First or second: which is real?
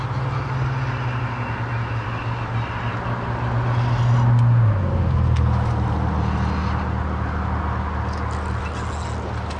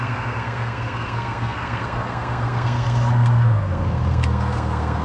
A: first